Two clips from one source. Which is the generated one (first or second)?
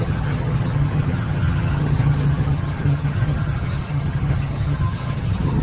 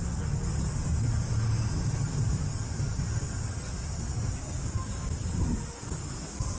first